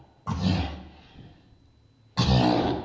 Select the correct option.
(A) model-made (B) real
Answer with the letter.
B